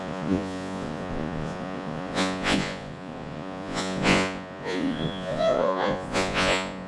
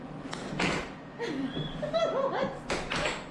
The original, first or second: second